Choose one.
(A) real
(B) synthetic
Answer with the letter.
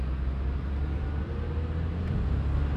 A